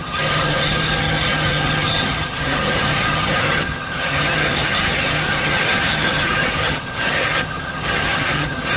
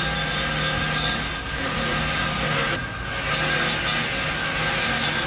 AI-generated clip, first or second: first